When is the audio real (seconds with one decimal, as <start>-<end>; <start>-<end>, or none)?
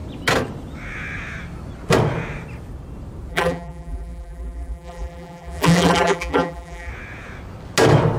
0.0-3.3; 6.9-8.2